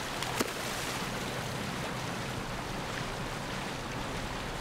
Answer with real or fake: real